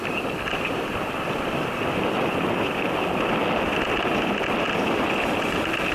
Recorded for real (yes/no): yes